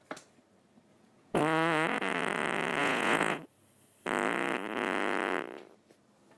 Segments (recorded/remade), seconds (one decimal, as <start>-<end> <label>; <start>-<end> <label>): 0.0-0.9 recorded; 0.9-1.4 remade; 1.4-2.8 recorded; 2.8-3.4 remade; 3.4-6.4 recorded